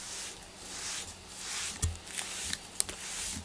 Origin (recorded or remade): recorded